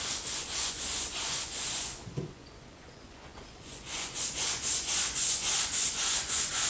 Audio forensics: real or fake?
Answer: fake